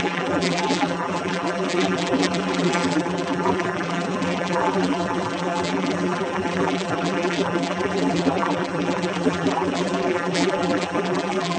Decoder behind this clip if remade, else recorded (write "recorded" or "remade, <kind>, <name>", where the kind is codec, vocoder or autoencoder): remade, vocoder, BigVGAN v2